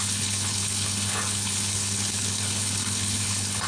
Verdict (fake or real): fake